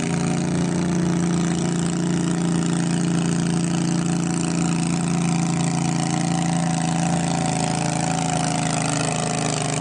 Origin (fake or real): real